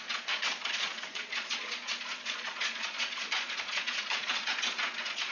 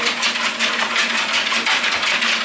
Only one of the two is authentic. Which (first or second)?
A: second